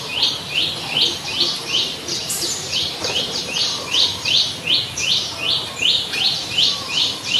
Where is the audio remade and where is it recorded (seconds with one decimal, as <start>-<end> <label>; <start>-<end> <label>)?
0.0-2.2 recorded; 2.2-3.8 remade; 3.8-7.4 recorded

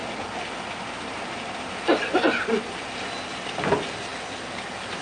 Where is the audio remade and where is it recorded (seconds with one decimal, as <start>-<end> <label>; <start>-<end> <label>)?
0.0-0.6 recorded; 0.6-4.1 remade; 4.1-5.0 recorded